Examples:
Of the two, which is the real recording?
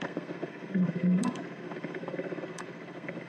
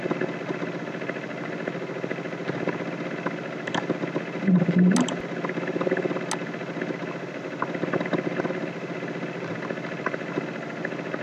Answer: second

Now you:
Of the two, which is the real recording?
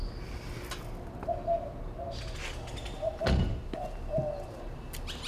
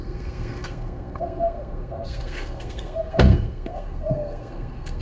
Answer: first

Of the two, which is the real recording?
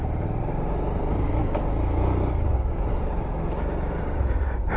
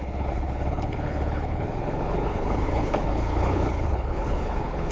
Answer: first